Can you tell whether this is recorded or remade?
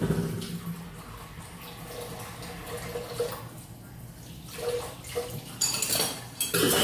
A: recorded